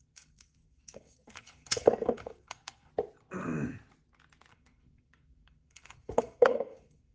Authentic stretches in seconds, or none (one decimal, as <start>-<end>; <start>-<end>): 2.9-4.5